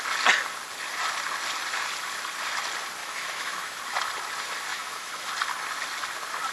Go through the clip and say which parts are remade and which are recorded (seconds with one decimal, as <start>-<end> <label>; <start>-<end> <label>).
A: 0.0-3.0 recorded; 3.0-3.8 remade; 3.8-4.7 recorded; 4.7-5.3 remade; 5.3-6.5 recorded